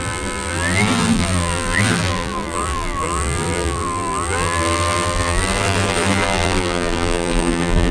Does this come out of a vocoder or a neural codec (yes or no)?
yes